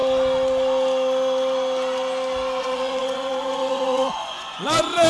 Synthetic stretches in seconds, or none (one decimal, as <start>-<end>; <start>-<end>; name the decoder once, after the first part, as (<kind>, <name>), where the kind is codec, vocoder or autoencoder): 2.6-5.1 (vocoder, Vocos)